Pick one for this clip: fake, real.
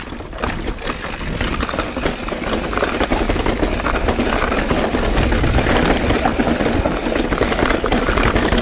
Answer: real